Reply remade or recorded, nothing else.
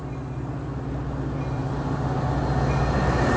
recorded